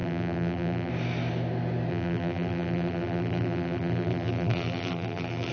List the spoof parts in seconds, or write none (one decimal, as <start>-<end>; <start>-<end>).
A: 0.0-0.9; 1.9-5.5